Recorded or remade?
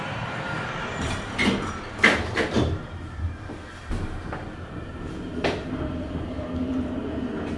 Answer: remade